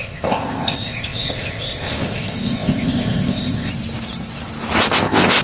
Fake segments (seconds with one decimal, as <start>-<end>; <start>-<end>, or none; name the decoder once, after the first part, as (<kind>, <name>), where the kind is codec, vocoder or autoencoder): 0.0-3.7 (codec, ZipCodec); 4.9-5.4